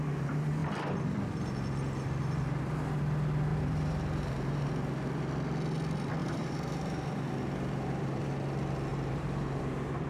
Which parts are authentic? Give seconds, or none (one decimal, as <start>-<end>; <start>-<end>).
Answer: 0.0-3.5; 4.7-6.2; 8.3-8.9; 9.6-10.1